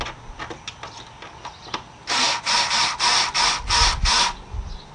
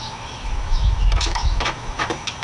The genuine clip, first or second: first